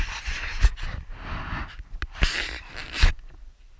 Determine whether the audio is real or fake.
real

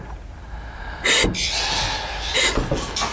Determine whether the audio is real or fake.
real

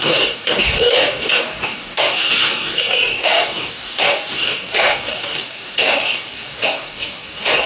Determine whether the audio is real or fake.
fake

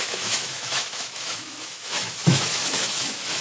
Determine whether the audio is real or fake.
fake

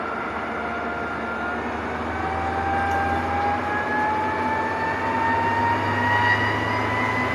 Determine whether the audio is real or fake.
real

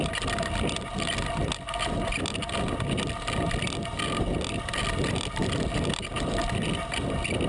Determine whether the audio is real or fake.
real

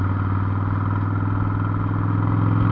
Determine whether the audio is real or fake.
real